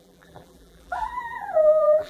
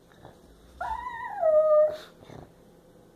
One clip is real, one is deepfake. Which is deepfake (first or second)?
first